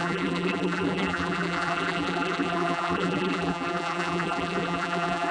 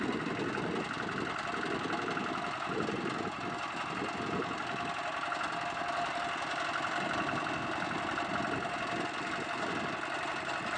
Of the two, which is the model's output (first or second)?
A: first